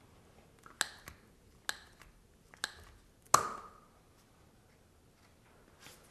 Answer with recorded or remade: recorded